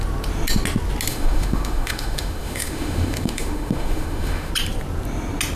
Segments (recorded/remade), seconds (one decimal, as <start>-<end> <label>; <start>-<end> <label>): 0.0-1.1 recorded; 1.1-4.5 remade; 4.5-5.6 recorded